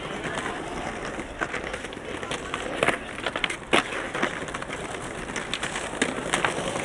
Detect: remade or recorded recorded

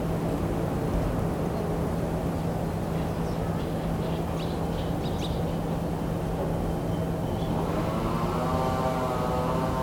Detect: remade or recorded recorded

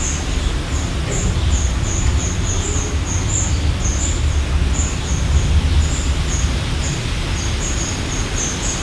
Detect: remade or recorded recorded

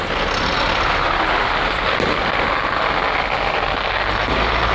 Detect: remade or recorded recorded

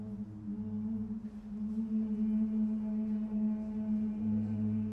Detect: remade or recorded recorded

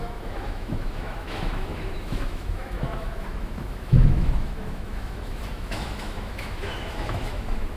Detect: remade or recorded remade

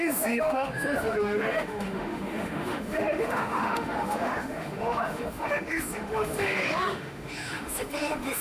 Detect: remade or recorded remade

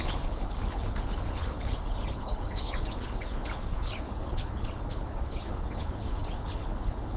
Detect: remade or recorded remade